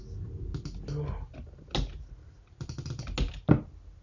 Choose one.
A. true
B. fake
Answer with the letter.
A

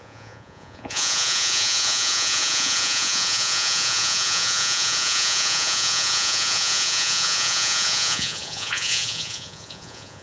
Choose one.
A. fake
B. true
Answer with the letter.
A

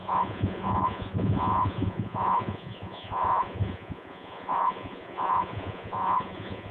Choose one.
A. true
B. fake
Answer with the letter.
B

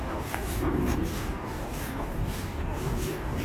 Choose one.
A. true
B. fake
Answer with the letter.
B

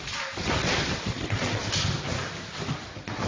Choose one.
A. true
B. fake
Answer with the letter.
A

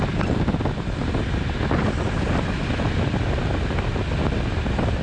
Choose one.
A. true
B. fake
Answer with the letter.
A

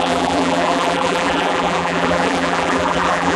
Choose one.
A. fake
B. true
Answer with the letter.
A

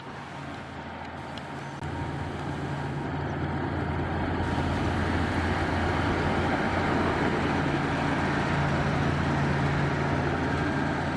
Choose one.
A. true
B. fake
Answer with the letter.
A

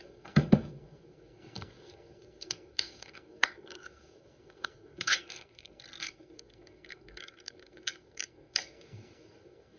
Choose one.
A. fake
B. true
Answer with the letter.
A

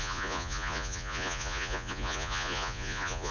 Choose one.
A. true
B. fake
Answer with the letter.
B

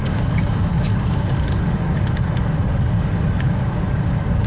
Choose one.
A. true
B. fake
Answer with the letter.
B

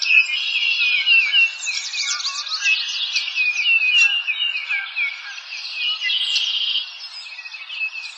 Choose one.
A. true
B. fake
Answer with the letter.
A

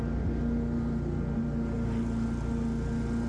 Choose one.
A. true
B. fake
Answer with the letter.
A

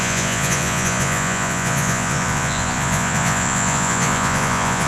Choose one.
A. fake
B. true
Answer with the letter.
A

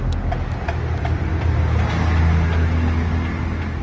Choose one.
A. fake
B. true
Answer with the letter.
B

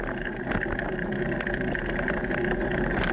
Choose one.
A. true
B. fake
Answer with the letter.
A